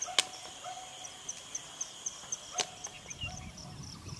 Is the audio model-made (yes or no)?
no